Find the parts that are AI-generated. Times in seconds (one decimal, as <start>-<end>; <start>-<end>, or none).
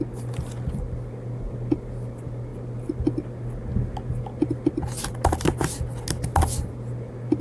none